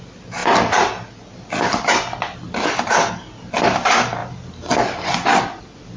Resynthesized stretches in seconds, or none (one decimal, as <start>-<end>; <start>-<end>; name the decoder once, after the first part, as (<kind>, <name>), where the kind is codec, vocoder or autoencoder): none